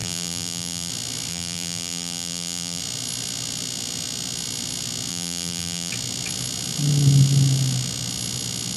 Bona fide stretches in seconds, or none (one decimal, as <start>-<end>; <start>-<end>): 0.9-1.3; 2.8-5.1; 5.9-8.8